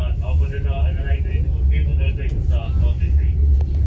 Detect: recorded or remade remade